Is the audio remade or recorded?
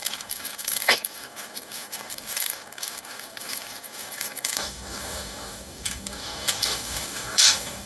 remade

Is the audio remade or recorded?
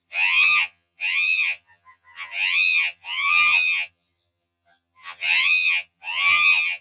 remade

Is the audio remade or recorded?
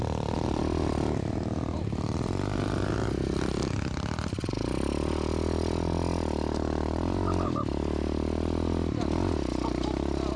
recorded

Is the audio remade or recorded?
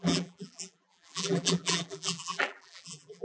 remade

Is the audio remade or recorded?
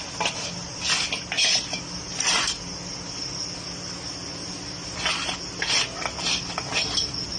recorded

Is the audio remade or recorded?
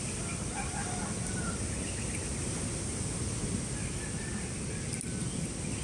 recorded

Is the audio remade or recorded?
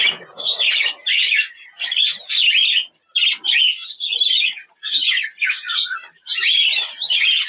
remade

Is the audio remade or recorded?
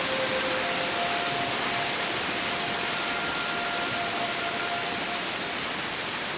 recorded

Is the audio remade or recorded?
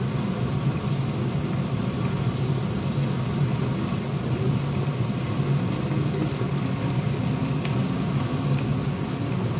recorded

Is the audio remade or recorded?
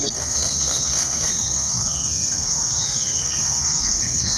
remade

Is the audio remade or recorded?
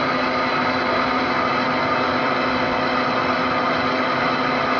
recorded